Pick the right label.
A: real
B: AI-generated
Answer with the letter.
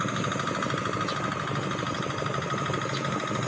A